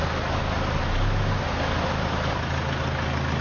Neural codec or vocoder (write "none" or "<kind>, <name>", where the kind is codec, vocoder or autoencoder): none